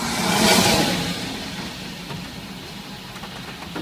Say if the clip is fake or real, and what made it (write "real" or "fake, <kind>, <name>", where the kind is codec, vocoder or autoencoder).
real